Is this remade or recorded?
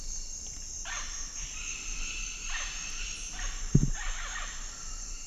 recorded